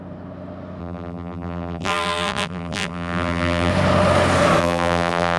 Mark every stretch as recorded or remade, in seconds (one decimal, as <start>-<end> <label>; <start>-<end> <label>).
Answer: 0.0-0.8 recorded; 0.8-3.7 remade; 3.7-4.6 recorded; 4.6-5.4 remade